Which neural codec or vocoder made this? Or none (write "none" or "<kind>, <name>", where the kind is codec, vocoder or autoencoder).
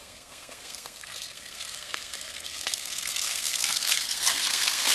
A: codec, SNAC